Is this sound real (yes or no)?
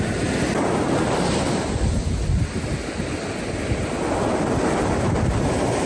yes